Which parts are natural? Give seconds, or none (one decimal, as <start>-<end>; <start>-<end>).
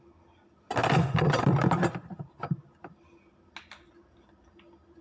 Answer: 0.0-5.0